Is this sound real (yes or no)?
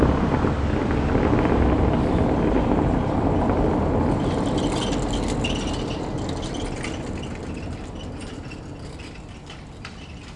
yes